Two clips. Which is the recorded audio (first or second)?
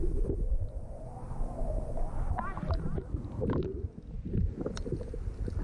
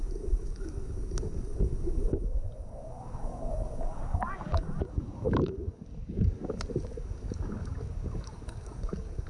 first